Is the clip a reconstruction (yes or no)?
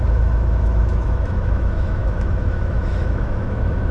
yes